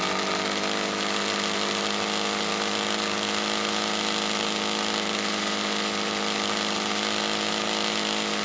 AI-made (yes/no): no